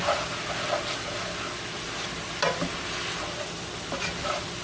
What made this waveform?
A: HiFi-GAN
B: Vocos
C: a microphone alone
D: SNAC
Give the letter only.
C